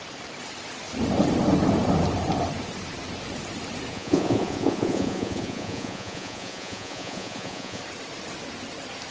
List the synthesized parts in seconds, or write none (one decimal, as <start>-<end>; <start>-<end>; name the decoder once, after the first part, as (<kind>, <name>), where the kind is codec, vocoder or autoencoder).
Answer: 3.9-7.8 (vocoder, Vocos)